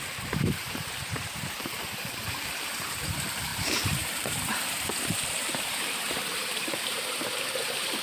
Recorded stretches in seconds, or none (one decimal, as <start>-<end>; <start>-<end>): none